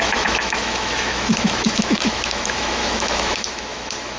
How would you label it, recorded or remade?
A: remade